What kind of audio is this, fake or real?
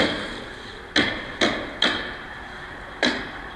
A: real